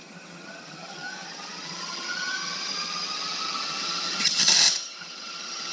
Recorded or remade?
remade